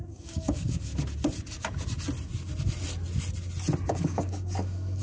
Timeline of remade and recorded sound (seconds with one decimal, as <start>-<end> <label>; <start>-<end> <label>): 0.0-0.9 remade; 0.9-3.9 recorded; 3.9-5.0 remade